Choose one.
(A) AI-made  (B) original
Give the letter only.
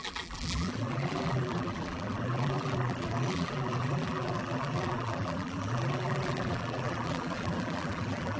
A